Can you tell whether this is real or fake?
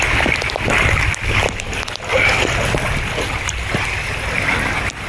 real